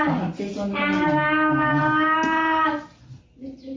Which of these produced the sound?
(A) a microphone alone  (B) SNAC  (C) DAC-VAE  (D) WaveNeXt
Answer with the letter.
A